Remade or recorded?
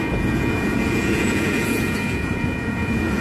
remade